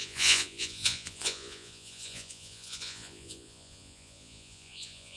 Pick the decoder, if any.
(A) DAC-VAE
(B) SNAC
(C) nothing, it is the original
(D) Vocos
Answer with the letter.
D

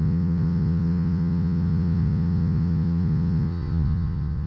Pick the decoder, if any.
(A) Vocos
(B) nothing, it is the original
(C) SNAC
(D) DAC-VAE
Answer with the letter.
A